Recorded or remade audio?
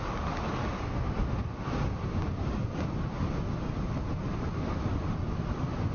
recorded